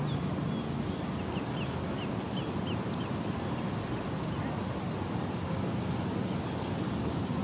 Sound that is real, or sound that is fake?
real